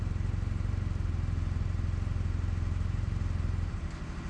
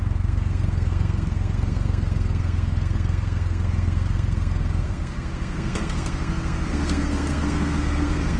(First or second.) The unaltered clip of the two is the first